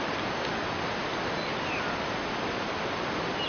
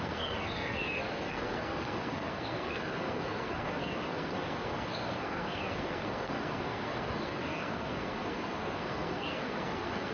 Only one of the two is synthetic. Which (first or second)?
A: second